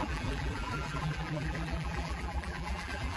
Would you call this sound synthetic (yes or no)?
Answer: yes